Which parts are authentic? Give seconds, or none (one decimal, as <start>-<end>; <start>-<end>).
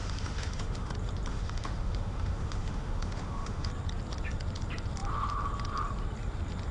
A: 0.9-1.3; 3.7-6.7